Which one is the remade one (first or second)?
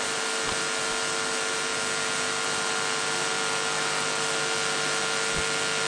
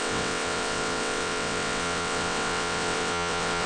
second